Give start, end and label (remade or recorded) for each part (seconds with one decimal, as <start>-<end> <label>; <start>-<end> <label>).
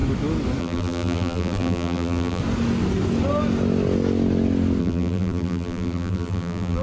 0.0-0.6 recorded; 0.6-2.4 remade; 2.4-4.8 recorded; 4.8-6.8 remade